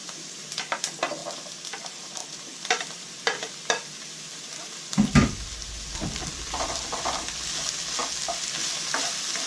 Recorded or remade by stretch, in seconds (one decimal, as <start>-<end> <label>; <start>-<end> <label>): 0.0-0.6 remade; 0.6-9.5 recorded